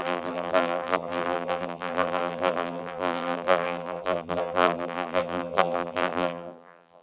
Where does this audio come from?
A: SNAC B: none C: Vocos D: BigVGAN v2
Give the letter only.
D